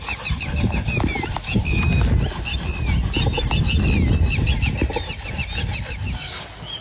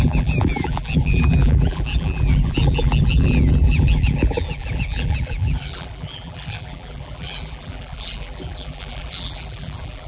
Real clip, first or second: first